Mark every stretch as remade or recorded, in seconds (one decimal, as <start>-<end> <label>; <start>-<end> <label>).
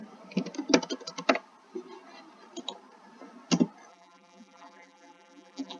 0.0-3.9 recorded; 3.9-5.8 remade